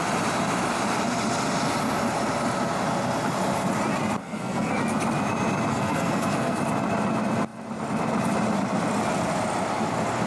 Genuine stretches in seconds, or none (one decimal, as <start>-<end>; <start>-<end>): 0.0-4.2; 4.8-5.7; 6.6-10.3